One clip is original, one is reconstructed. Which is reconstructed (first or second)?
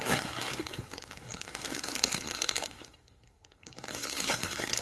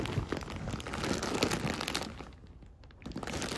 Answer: first